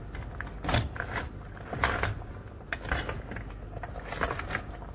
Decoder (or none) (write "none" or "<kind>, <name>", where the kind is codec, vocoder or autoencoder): none